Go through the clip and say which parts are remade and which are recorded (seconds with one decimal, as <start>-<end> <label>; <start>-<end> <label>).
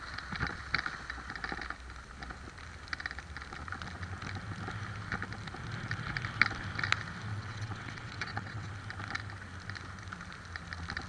0.0-7.3 recorded; 7.3-8.7 remade; 8.7-11.1 recorded